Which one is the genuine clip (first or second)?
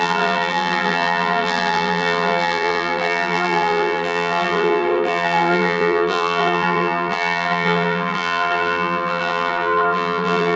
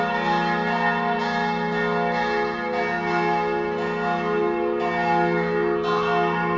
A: second